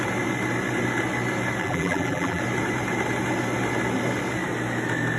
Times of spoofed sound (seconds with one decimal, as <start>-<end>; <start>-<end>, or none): 1.6-2.4